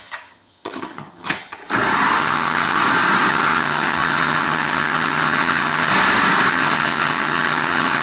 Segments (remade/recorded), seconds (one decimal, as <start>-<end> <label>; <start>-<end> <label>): 0.0-1.6 remade; 1.6-2.2 recorded; 2.2-2.8 remade; 2.8-3.3 recorded; 3.3-5.9 remade; 5.9-6.5 recorded; 6.5-8.0 remade